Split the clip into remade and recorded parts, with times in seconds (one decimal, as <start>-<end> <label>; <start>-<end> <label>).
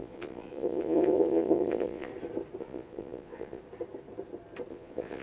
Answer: 0.0-2.1 remade; 2.1-2.6 recorded; 2.6-3.6 remade; 3.6-4.7 recorded; 4.7-5.2 remade